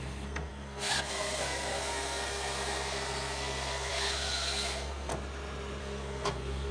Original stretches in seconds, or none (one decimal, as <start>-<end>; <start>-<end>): 5.1-5.8